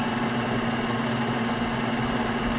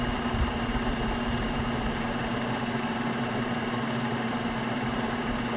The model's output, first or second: second